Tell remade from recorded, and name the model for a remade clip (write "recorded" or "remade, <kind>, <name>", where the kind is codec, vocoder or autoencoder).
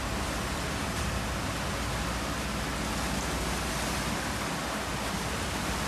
recorded